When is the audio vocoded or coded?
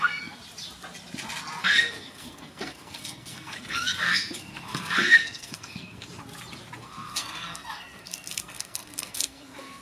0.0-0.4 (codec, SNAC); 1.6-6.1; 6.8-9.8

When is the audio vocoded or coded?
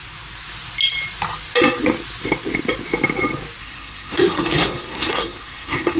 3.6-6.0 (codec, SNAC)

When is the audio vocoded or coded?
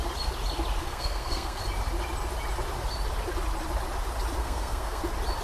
0.8-1.6 (codec, SNAC); 4.4-5.0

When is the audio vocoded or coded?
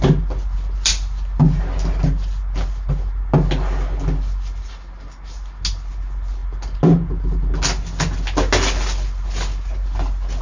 none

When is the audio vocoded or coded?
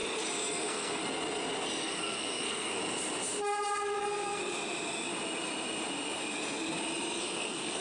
0.6-1.0 (codec, SNAC); 1.8-2.8; 4.0-4.4; 7.2-7.8